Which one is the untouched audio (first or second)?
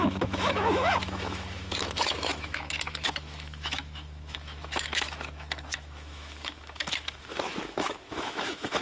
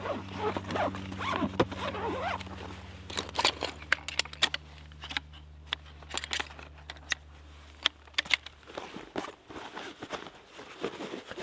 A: second